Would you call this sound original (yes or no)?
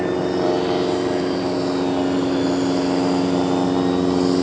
yes